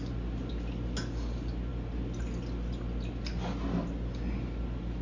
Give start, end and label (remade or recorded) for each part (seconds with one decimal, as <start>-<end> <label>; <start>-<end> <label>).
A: 0.0-5.0 recorded